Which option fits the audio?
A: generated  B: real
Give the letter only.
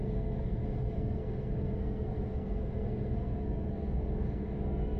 A